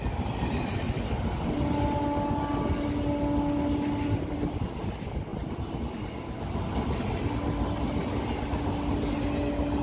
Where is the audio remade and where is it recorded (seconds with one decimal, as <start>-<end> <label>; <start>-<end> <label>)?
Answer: 0.0-9.8 recorded